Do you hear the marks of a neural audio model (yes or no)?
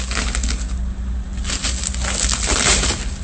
no